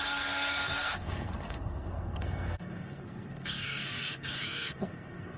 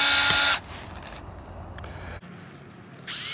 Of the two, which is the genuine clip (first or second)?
second